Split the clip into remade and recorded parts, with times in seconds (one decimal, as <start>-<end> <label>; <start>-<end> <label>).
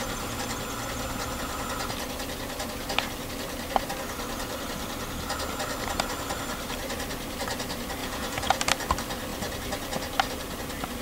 0.0-8.0 recorded; 8.0-8.6 remade; 8.6-11.0 recorded